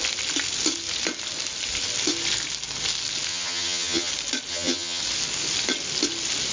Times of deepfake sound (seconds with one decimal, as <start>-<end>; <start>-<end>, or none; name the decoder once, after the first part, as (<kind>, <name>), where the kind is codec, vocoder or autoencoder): 3.3-4.1 (vocoder, HiFi-GAN); 4.5-5.0